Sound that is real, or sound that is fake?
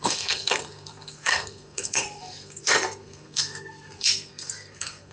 fake